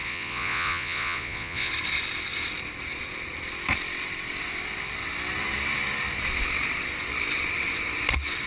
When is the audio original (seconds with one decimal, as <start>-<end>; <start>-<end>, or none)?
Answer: 1.7-8.5